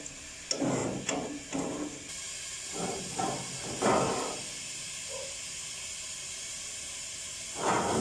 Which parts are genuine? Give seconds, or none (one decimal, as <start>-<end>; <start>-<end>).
0.0-8.0

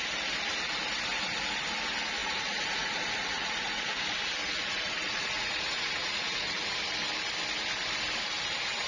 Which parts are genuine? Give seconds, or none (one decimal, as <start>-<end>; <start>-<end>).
0.0-2.2; 4.0-4.4; 6.7-8.9

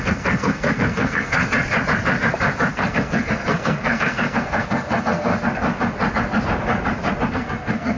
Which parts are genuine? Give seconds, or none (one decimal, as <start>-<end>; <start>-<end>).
1.4-2.7; 5.3-7.3

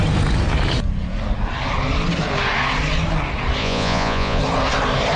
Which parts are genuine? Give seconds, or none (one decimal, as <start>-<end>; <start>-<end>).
0.0-3.6; 4.4-5.2